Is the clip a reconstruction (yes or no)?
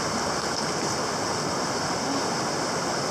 no